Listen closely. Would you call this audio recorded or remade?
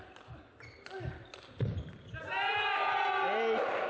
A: recorded